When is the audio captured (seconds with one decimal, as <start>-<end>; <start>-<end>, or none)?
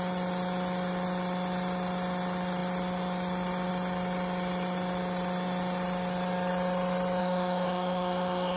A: 0.0-7.2